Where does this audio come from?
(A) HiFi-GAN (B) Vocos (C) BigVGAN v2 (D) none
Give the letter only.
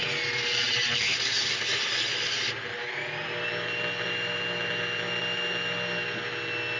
D